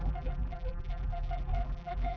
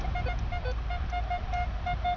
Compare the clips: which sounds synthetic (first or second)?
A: first